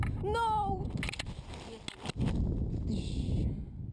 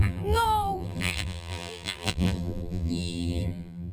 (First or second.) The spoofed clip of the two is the second